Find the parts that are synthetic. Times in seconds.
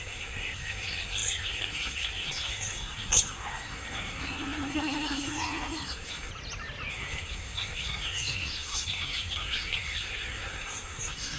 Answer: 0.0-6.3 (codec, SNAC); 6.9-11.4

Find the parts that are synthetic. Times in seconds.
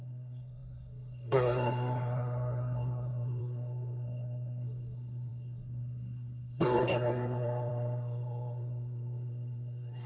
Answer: 0.0-10.1 (codec, SNAC)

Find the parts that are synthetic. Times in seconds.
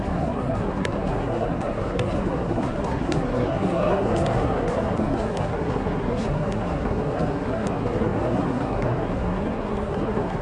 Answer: 0.0-10.4 (codec, SNAC)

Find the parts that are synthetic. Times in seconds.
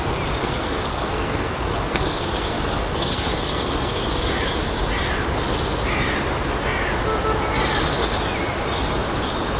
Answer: 0.4-4.1 (codec, SNAC)